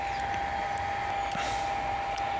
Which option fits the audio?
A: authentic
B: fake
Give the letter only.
A